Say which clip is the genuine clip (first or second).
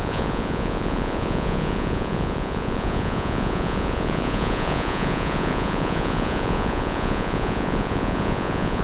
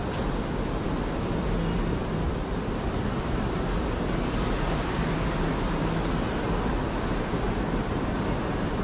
second